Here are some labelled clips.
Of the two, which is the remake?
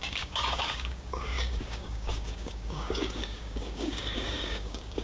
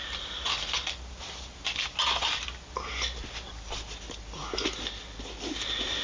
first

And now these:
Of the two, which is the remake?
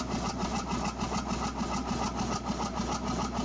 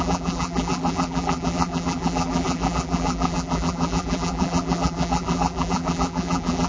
second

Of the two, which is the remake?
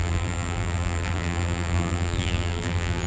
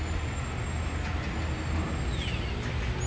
first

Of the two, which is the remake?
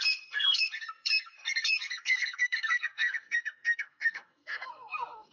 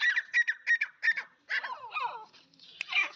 first